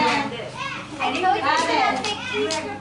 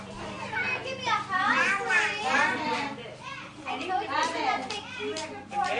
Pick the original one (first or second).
first